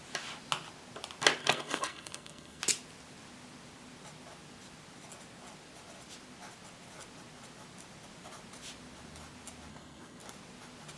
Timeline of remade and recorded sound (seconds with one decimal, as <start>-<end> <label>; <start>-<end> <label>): 0.0-1.4 recorded; 1.4-2.6 remade; 2.6-9.7 recorded; 9.7-10.2 remade; 10.2-11.0 recorded